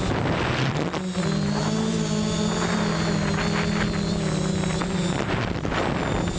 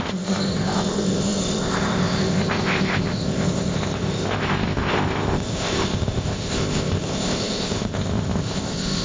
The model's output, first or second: second